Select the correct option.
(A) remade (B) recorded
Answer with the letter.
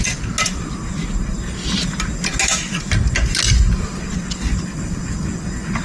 B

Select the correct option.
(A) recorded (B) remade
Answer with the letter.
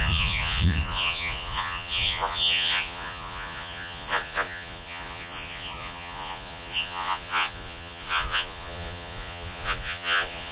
B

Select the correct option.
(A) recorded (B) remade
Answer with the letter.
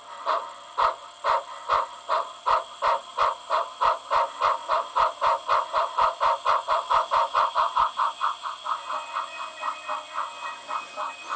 A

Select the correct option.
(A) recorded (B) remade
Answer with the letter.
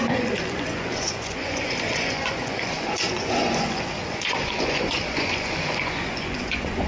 B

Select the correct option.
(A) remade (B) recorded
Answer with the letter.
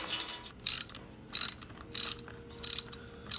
B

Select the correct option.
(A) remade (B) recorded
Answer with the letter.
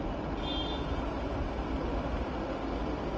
B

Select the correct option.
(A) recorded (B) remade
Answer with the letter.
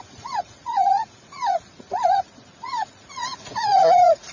B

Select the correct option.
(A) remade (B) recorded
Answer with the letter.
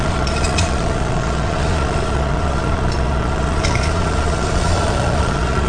A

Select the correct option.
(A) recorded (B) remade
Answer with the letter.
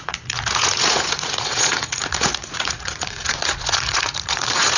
B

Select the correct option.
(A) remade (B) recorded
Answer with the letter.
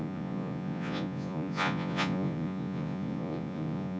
A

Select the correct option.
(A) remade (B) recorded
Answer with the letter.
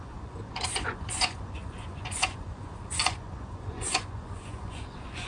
A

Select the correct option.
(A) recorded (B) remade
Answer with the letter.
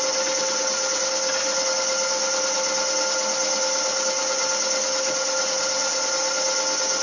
A